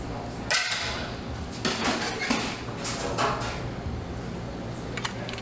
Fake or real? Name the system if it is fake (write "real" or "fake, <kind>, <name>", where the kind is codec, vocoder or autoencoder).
real